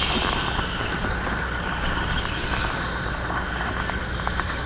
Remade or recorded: recorded